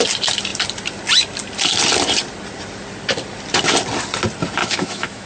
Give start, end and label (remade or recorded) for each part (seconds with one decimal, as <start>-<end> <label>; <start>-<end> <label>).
0.0-4.6 recorded; 4.6-5.3 remade